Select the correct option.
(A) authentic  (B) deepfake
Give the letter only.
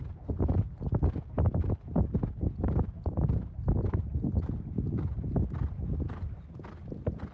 A